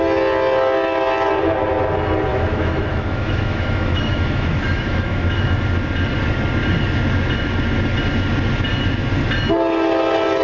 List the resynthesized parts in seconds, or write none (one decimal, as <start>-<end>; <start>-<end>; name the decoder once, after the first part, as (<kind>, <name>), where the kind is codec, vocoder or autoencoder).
2.3-5.6 (autoencoder, DAC-VAE)